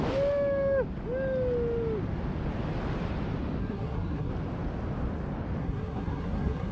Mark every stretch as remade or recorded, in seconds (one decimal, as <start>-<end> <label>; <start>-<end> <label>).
0.0-3.6 recorded; 3.6-4.3 remade; 4.3-5.6 recorded; 5.6-6.7 remade